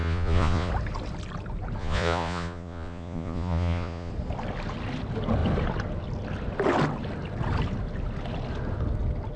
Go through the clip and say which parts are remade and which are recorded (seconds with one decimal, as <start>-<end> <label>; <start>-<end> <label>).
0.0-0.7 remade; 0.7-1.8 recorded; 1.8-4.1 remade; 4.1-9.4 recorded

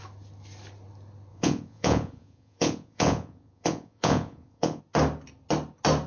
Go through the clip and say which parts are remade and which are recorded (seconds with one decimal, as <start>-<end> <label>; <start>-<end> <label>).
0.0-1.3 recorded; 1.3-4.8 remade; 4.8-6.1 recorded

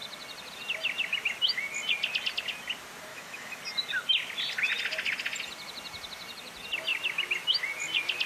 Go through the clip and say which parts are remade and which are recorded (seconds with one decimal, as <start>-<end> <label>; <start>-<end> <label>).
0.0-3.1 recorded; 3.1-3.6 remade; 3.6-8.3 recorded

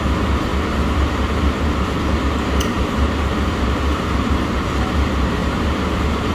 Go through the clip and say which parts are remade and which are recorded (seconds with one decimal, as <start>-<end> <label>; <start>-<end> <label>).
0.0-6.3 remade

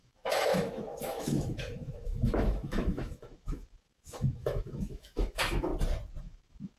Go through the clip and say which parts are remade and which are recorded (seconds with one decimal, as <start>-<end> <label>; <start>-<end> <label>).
0.0-5.7 remade; 5.7-6.2 recorded; 6.2-6.8 remade

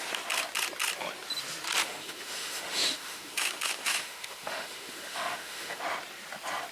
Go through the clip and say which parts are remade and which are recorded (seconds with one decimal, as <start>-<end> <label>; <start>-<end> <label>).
0.0-1.8 recorded; 1.8-5.8 remade; 5.8-6.7 recorded